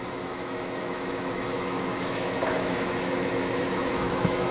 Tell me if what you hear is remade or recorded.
remade